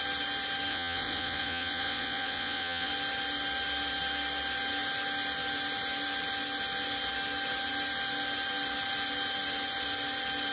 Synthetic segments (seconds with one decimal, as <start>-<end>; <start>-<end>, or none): 0.7-2.9